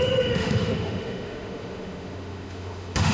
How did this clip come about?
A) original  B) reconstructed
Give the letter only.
B